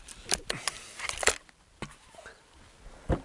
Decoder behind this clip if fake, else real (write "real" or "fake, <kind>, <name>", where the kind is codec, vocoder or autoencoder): real